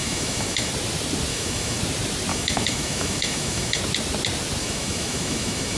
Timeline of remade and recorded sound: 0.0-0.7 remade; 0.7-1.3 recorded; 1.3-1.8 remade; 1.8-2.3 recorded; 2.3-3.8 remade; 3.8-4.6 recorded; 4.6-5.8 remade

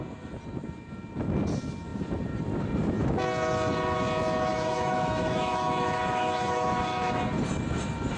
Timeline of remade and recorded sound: 0.0-4.5 recorded; 4.5-7.2 remade; 7.2-8.2 recorded

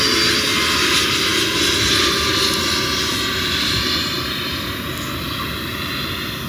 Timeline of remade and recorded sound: 0.0-6.5 recorded

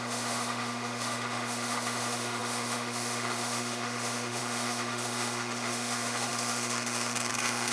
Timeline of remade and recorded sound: 0.0-7.7 remade

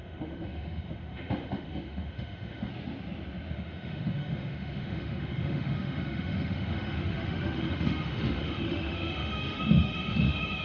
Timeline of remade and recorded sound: 0.0-2.7 remade; 2.7-3.5 recorded; 3.5-10.6 remade

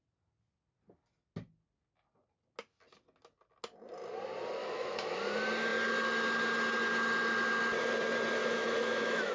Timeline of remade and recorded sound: 0.0-4.6 recorded; 4.6-5.2 remade; 5.2-8.4 recorded; 8.4-9.3 remade

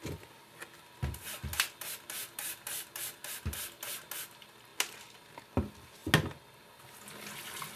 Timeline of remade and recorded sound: 0.0-7.8 recorded